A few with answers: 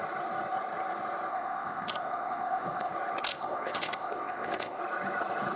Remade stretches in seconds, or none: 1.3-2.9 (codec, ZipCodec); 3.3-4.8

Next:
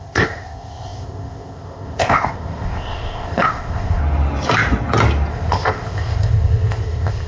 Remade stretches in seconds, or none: 0.0-4.0 (codec, ZipCodec); 5.3-7.3

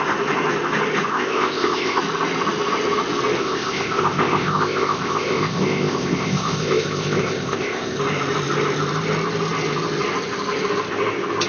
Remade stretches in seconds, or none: 1.1-2.0 (codec, ZipCodec); 3.4-8.0

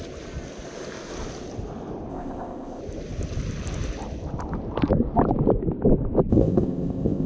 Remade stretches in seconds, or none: 2.1-2.8 (codec, ZipCodec); 6.3-7.3

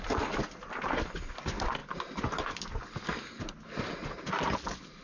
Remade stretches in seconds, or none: none

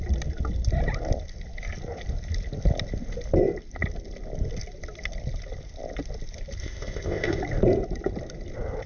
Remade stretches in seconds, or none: 6.6-7.4 (codec, ZipCodec)

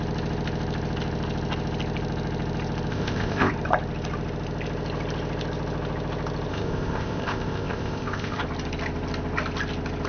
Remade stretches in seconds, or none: 2.9-3.5 (codec, ZipCodec); 6.5-8.4

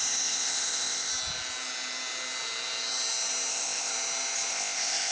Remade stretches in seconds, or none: 0.0-1.1 (codec, ZipCodec); 3.5-3.9; 4.5-5.1